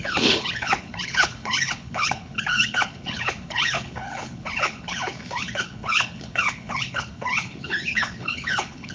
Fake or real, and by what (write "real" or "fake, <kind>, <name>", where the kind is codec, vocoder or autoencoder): fake, codec, HILCodec